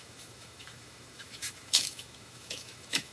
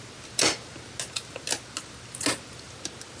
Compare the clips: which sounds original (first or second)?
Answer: second